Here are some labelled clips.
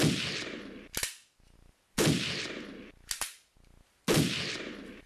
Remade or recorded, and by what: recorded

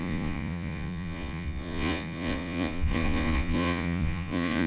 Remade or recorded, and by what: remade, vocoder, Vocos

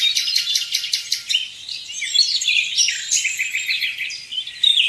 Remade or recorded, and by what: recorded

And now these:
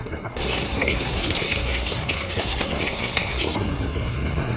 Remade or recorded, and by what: remade, codec, SNAC